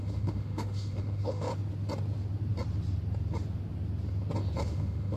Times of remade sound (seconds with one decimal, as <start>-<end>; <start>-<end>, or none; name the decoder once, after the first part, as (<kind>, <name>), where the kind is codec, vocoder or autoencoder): 0.0-1.5 (autoencoder, DAC-VAE); 4.6-5.2